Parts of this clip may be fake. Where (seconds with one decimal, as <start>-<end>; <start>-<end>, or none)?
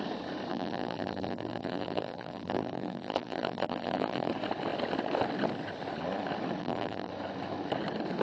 0.5-4.3; 6.6-7.1